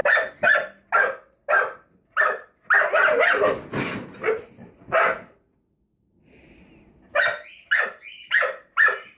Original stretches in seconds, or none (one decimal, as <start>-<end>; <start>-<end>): 0.0-9.2